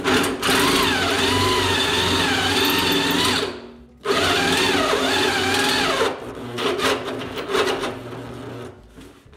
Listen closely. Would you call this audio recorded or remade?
recorded